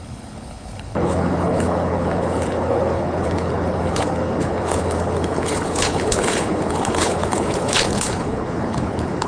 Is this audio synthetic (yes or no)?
yes